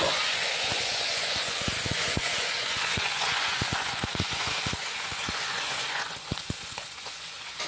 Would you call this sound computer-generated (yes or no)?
yes